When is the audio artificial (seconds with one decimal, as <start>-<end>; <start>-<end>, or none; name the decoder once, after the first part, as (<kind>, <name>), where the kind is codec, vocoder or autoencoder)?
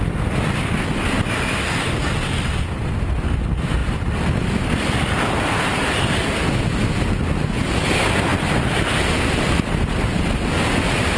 3.8-6.3 (vocoder, BigVGAN v2); 8.3-11.2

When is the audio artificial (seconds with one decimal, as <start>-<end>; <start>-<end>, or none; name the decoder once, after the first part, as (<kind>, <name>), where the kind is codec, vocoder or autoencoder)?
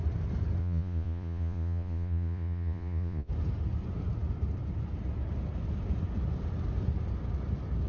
0.6-3.3 (vocoder, Vocos)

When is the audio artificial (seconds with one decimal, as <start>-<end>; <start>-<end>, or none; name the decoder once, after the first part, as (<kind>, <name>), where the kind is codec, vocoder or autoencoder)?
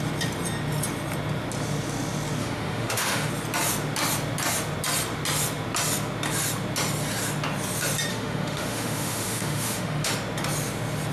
2.4-3.3 (autoencoder, DAC-VAE); 8.1-10.1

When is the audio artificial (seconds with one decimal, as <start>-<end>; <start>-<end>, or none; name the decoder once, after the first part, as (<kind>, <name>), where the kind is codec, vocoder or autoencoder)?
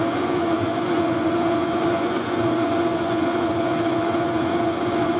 0.0-5.2 (vocoder, Vocos)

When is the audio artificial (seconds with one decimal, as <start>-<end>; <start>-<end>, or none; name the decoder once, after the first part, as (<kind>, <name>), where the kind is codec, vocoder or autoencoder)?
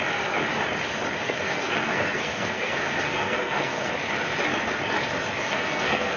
1.2-3.9 (codec, SNAC); 5.4-6.2